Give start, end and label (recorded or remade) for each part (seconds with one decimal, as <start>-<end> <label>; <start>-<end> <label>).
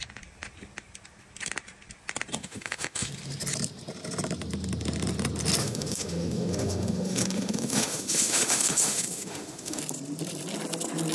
0.0-2.4 recorded; 2.4-3.1 remade; 3.1-5.6 recorded; 5.6-9.8 remade; 9.8-11.1 recorded